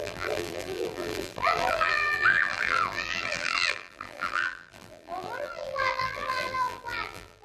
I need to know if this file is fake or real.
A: fake